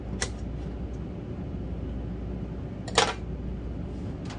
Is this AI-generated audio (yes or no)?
no